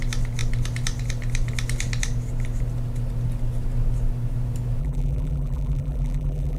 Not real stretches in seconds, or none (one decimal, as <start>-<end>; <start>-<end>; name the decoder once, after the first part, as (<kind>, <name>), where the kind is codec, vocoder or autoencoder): 4.8-6.6 (vocoder, BigVGAN v2)

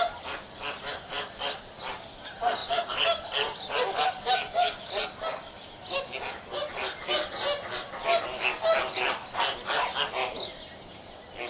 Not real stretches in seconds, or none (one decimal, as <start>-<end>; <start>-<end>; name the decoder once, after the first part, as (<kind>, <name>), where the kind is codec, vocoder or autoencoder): 1.1-2.1 (vocoder, BigVGAN v2); 2.6-5.2

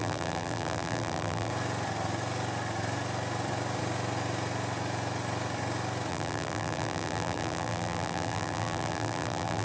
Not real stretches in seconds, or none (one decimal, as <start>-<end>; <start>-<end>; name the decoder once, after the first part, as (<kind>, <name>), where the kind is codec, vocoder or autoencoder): 0.0-1.5 (vocoder, BigVGAN v2); 6.1-9.6

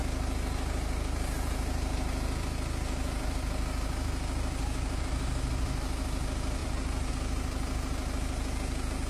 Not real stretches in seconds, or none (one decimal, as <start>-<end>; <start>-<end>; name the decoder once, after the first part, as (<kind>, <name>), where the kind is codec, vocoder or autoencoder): 6.6-7.1 (vocoder, BigVGAN v2)

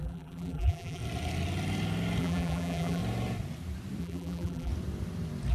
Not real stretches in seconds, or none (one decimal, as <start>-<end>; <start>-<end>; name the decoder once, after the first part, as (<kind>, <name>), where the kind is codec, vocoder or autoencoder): 0.0-1.0 (vocoder, BigVGAN v2); 2.2-3.0; 4.0-4.7